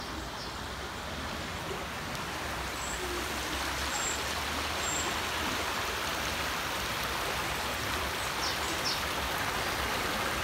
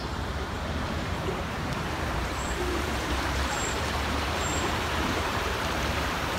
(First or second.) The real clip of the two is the first